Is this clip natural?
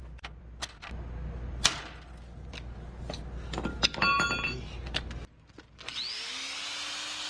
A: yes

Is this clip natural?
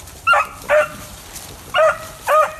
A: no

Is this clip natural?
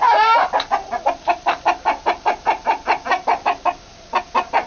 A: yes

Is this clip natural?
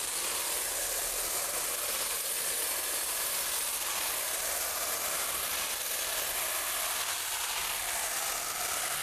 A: yes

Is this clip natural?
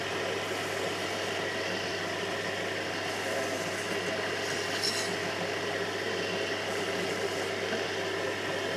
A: yes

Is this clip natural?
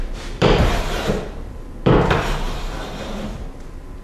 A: no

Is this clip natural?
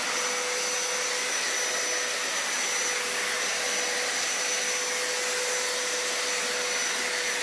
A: yes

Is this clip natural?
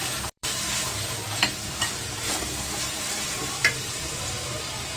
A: no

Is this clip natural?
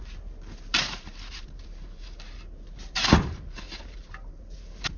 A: no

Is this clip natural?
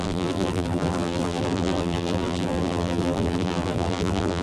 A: no